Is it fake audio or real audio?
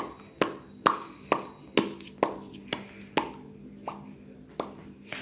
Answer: real